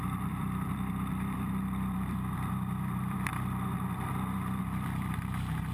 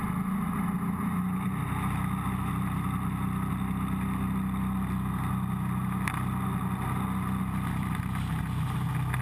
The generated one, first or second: first